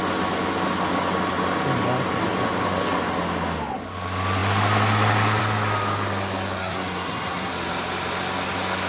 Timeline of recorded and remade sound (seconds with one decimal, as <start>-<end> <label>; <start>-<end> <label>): 0.0-6.6 recorded; 6.6-7.5 remade; 7.5-8.9 recorded